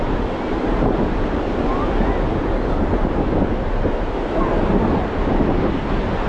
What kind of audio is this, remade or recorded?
recorded